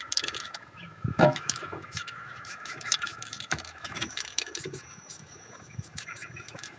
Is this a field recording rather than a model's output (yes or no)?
no